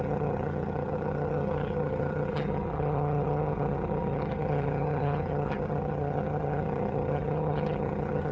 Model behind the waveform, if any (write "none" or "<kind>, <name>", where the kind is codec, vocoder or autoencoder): vocoder, HiFi-GAN